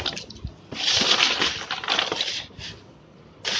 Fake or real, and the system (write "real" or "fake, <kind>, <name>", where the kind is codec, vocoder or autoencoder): real